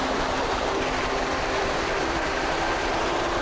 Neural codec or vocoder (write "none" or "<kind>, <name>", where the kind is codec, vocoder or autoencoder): vocoder, BigVGAN v2